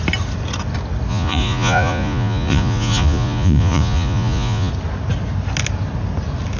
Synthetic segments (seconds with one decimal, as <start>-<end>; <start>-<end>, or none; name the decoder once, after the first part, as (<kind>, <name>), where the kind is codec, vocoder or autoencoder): 1.1-4.7 (vocoder, Vocos)